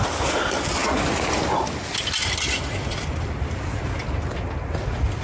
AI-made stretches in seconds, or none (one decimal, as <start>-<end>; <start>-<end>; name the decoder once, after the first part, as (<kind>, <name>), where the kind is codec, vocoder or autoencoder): none